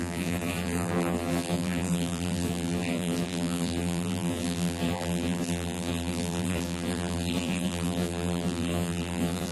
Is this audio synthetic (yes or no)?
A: yes